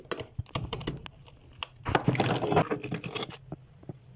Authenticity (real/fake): real